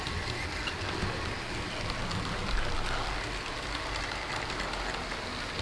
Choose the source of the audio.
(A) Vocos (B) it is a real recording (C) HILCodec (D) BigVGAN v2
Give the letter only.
B